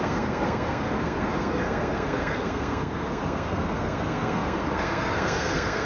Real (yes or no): no